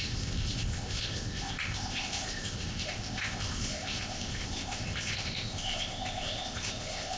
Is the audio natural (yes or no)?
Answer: no